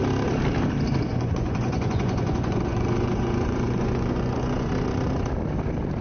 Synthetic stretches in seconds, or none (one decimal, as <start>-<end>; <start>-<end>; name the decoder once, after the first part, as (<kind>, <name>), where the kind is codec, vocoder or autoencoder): 1.1-4.7 (vocoder, Vocos)